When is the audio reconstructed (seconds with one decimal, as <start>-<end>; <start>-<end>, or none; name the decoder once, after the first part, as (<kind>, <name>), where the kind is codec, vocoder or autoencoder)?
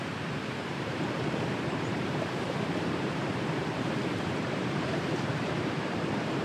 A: 0.0-6.4 (vocoder, BigVGAN v2)